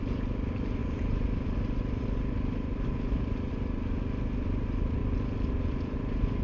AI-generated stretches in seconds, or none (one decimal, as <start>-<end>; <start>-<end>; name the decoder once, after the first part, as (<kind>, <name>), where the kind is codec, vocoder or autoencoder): none